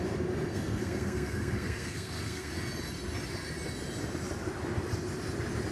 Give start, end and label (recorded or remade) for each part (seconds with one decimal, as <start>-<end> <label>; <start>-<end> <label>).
0.0-0.5 recorded; 0.5-2.5 remade; 2.5-5.7 recorded